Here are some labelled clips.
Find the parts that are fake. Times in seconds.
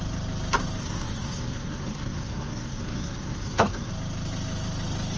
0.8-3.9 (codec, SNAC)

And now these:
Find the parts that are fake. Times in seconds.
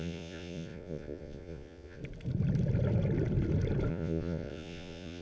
0.0-2.0 (vocoder, Vocos); 3.9-5.2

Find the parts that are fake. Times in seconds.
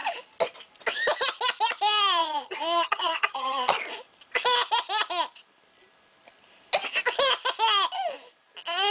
2.2-3.8 (vocoder, HiFi-GAN)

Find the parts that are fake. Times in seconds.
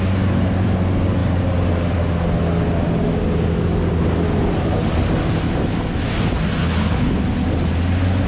6.6-7.2 (codec, HILCodec)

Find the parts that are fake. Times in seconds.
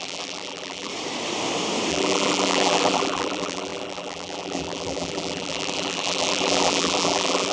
0.0-0.9 (vocoder, BigVGAN v2); 1.9-7.5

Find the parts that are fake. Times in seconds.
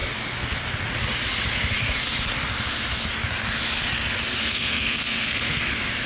4.4-5.6 (codec, SNAC)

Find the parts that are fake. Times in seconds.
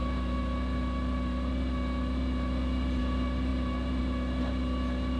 none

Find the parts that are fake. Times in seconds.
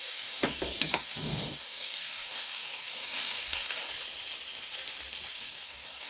0.0-3.9 (codec, DAC); 5.3-6.1